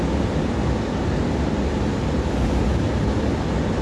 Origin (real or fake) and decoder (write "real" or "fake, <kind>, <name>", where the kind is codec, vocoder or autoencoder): real